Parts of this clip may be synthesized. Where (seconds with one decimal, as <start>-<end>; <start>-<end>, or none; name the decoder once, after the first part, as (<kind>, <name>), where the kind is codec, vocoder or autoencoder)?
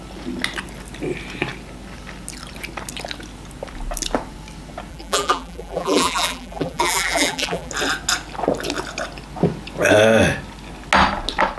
4.9-7.7 (vocoder, BigVGAN v2)